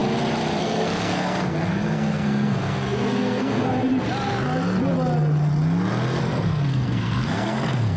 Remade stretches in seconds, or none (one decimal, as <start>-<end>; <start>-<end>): 0.6-3.7; 6.2-8.0